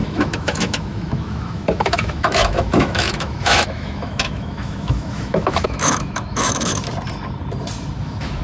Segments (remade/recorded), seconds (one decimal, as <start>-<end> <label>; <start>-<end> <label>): 0.0-6.7 remade; 6.7-8.0 recorded; 8.0-8.4 remade